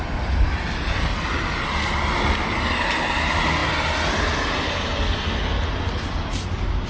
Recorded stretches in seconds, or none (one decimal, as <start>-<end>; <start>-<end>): 0.0-6.9